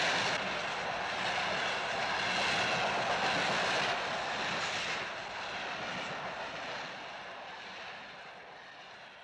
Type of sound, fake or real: real